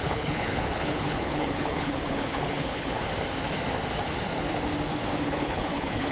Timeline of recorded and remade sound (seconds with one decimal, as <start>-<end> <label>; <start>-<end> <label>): 0.0-3.0 remade; 3.0-5.3 recorded; 5.3-6.1 remade